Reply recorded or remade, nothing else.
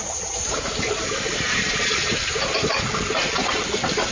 remade